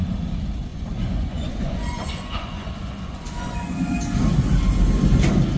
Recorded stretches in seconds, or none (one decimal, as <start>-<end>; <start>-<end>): 0.0-0.7; 3.9-5.6